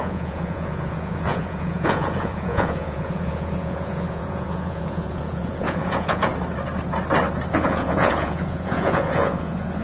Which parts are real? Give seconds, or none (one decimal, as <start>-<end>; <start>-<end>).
6.3-7.5